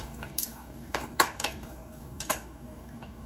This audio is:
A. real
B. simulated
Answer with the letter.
B